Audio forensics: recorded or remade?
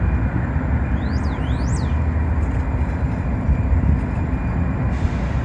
recorded